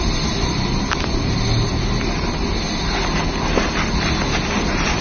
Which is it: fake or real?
real